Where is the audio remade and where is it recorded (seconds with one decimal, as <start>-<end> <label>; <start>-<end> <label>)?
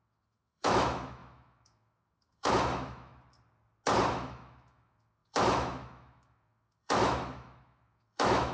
0.0-3.1 remade; 3.1-4.1 recorded; 4.1-8.5 remade